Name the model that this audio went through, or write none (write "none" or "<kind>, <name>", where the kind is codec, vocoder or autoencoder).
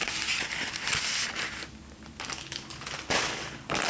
none